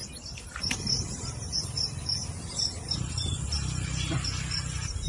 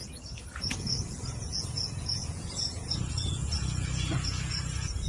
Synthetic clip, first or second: second